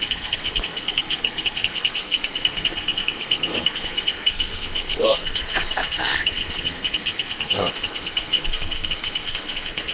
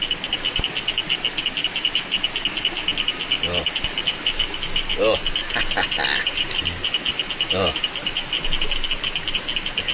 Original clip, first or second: second